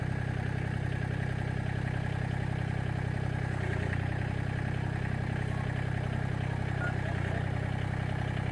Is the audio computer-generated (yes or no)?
no